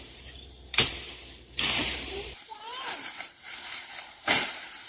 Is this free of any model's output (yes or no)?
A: no